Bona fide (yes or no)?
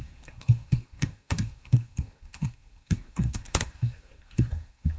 no